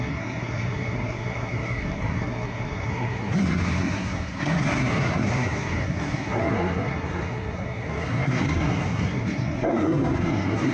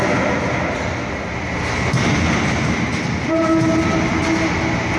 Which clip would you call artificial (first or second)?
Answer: first